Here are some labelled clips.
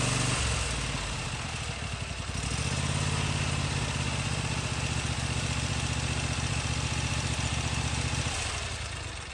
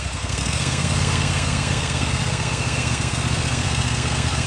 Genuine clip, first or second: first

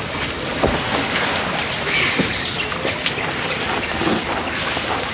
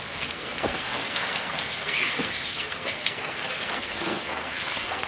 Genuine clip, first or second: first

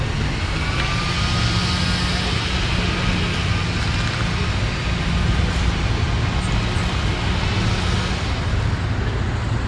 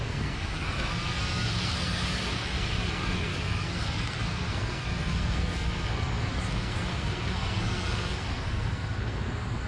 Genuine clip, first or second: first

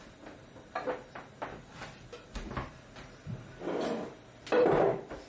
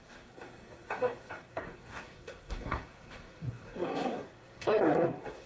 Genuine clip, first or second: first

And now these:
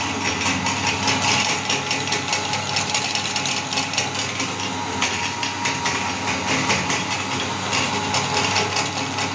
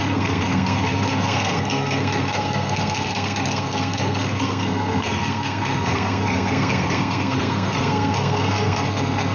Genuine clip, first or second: first